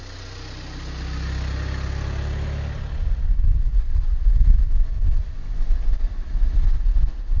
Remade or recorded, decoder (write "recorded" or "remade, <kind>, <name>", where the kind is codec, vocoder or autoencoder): recorded